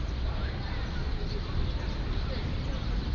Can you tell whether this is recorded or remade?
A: recorded